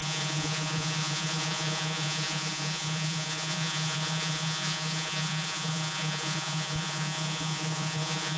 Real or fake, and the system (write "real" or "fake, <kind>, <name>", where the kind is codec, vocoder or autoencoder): fake, vocoder, Vocos